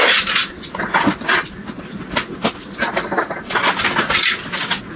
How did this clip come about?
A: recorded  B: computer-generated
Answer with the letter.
A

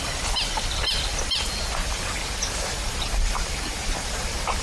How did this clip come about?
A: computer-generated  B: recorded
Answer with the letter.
A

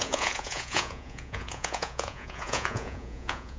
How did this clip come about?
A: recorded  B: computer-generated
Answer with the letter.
B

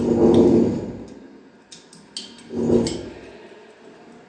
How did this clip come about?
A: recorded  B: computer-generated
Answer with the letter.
A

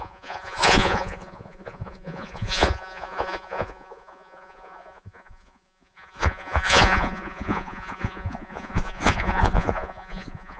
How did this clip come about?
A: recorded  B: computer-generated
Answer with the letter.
B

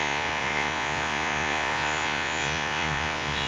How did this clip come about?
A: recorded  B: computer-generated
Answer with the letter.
B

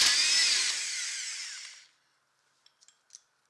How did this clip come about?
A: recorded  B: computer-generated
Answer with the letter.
A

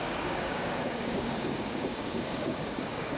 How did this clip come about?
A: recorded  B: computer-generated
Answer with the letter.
B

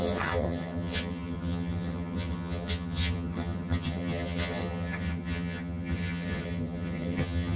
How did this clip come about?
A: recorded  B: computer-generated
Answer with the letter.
B